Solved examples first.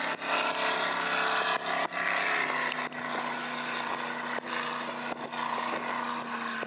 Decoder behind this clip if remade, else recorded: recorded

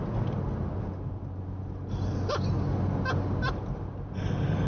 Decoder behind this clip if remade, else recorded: recorded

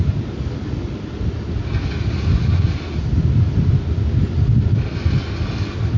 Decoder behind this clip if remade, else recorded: recorded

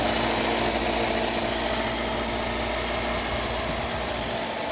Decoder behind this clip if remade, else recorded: recorded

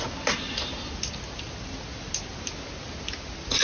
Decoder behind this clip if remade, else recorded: recorded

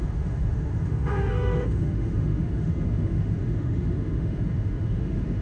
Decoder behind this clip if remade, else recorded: remade, autoencoder, DAC-VAE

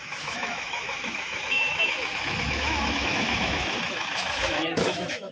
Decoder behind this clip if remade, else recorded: remade, autoencoder, DAC-VAE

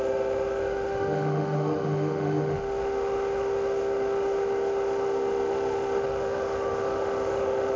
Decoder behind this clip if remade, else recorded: remade, autoencoder, DAC-VAE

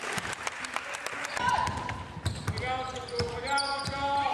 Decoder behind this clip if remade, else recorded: recorded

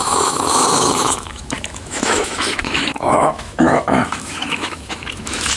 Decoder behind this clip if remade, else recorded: remade, autoencoder, DAC-VAE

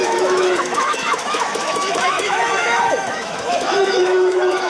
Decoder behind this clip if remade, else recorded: remade, autoencoder, DAC-VAE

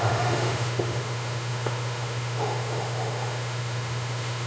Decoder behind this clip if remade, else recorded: remade, autoencoder, DAC-VAE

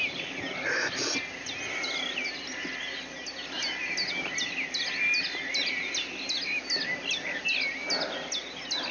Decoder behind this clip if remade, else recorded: recorded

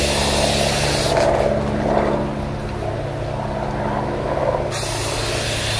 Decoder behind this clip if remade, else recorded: recorded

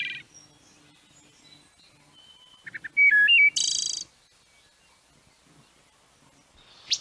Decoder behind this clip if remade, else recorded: recorded